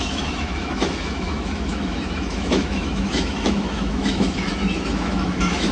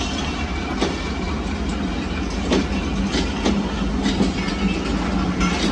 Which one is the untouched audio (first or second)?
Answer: second